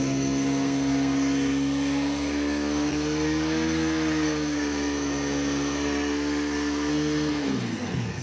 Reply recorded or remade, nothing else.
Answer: remade